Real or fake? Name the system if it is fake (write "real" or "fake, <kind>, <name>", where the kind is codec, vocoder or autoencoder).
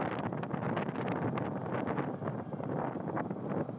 real